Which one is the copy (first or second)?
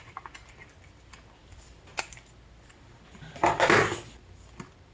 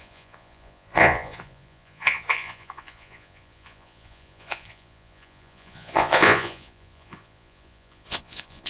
second